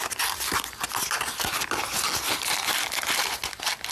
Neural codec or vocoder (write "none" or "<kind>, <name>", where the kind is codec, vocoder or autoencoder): none